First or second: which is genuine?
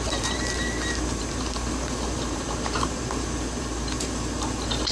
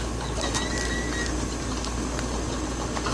second